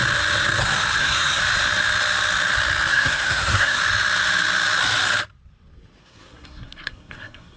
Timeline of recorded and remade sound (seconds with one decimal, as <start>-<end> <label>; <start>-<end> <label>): 0.0-1.0 recorded; 1.0-1.4 remade; 1.4-2.9 recorded; 2.9-3.8 remade; 3.8-6.0 recorded; 6.0-7.6 remade